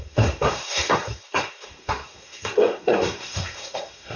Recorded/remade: remade